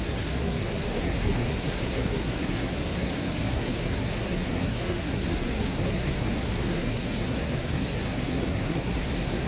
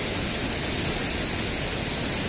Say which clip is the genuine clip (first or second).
second